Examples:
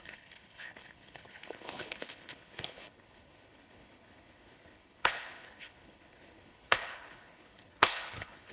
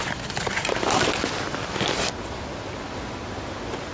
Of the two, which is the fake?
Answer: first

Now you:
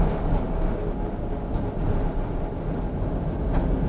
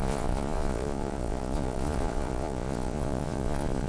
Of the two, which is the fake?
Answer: second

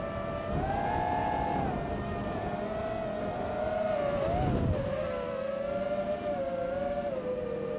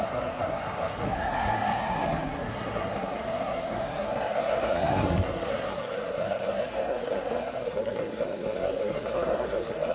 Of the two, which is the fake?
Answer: second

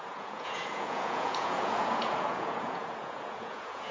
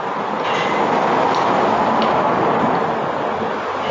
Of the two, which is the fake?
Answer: first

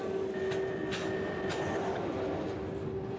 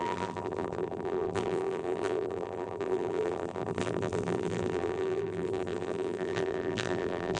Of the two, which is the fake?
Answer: second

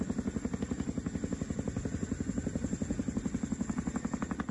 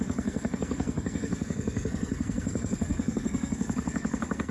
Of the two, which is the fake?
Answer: second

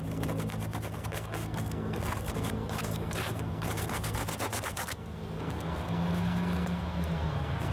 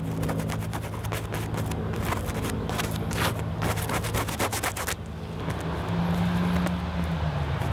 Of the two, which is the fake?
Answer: first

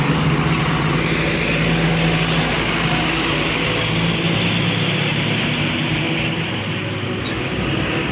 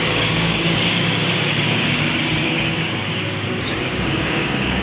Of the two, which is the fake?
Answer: second